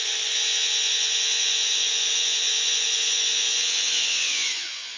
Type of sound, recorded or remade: remade